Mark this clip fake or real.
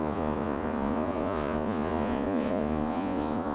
fake